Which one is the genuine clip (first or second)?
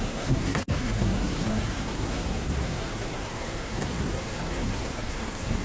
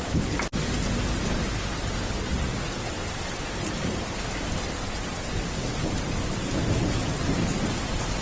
second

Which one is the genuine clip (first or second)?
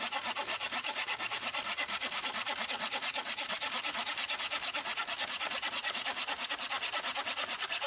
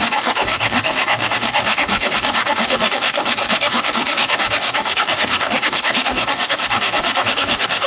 first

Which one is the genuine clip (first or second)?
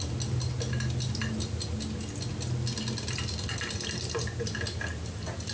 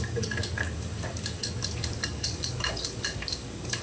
first